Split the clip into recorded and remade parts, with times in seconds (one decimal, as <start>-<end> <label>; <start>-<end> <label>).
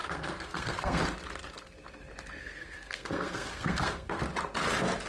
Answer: 0.0-1.0 remade; 1.0-2.4 recorded; 2.4-4.2 remade; 4.2-5.1 recorded